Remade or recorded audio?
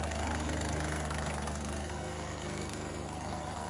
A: remade